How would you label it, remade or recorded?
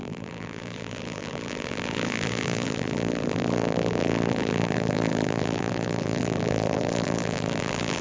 remade